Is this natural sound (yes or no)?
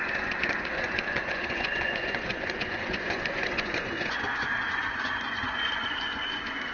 no